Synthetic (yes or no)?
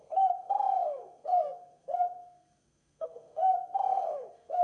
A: yes